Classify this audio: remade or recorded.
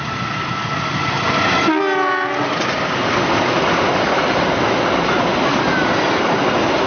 recorded